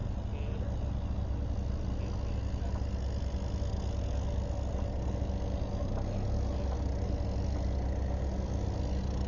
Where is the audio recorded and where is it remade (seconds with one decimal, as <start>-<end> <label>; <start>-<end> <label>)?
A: 0.0-9.3 recorded